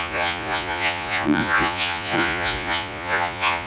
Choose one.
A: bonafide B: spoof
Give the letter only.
B